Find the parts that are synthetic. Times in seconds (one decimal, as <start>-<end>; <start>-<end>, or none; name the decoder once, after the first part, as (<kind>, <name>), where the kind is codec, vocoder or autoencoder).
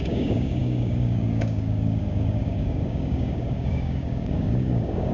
0.0-5.1 (codec, DAC)